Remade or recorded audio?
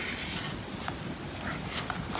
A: recorded